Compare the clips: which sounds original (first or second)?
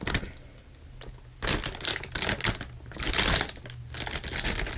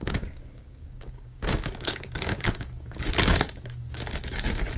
first